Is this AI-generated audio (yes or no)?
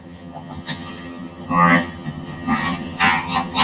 yes